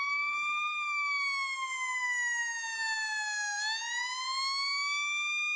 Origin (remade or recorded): recorded